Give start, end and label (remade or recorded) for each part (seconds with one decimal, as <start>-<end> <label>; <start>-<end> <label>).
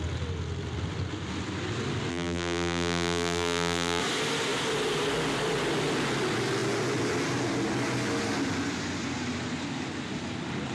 0.0-2.1 recorded; 2.1-4.0 remade; 4.0-10.7 recorded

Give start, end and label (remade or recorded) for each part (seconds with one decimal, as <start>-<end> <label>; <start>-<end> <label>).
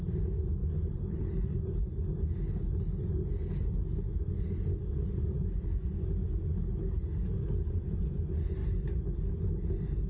0.0-0.6 recorded; 0.6-1.8 remade; 1.8-10.1 recorded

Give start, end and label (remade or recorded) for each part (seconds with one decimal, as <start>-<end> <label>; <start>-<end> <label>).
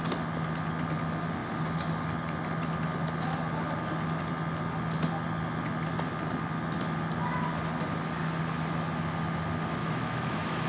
0.0-9.8 recorded; 9.8-10.7 remade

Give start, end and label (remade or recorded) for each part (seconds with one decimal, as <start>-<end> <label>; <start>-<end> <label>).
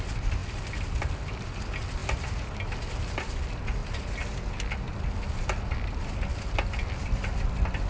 0.0-7.9 recorded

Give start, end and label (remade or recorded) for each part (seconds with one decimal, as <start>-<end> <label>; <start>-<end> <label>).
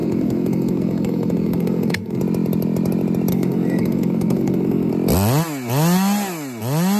0.0-2.2 remade; 2.2-3.3 recorded; 3.3-4.9 remade; 4.9-7.0 recorded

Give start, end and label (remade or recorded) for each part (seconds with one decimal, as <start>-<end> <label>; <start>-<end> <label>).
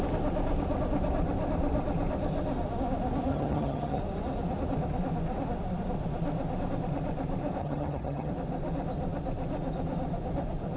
0.0-3.3 recorded; 3.3-4.0 remade; 4.0-7.6 recorded; 7.6-8.3 remade; 8.3-10.8 recorded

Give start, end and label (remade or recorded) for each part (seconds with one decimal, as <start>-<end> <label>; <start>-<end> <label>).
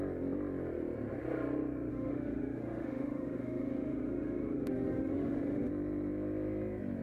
0.0-1.9 recorded; 1.9-5.7 remade; 5.7-7.0 recorded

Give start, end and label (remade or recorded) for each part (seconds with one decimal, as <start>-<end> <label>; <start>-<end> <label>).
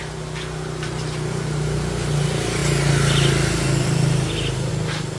0.0-5.2 recorded